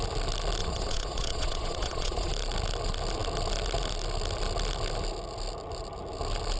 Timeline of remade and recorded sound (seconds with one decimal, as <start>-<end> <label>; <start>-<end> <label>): 0.0-0.6 recorded; 0.6-2.3 remade; 2.3-6.6 recorded